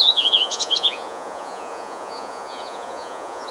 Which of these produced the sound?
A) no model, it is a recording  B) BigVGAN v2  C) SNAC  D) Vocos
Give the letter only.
D